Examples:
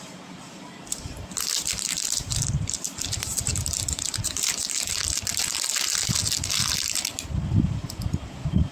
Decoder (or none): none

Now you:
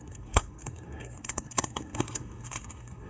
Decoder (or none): codec, SNAC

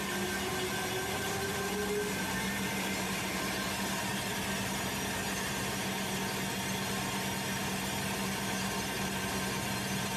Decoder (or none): none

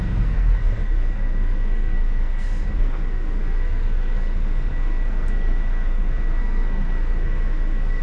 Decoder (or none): codec, SNAC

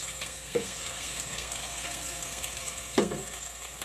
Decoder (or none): codec, SNAC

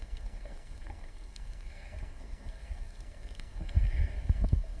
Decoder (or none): codec, SNAC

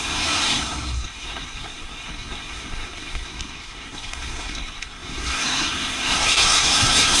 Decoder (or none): codec, SNAC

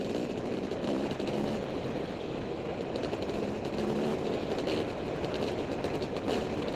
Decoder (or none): none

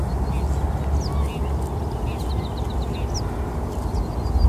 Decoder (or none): none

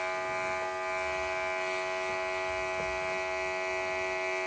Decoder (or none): none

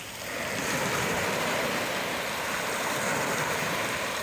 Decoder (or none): none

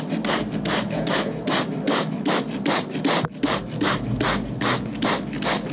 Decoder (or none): none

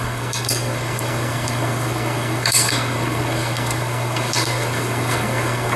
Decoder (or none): codec, SNAC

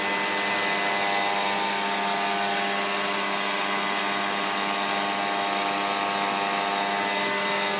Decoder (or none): none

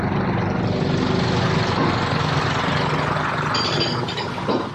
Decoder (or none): none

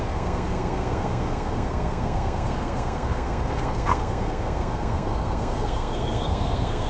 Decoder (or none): codec, SNAC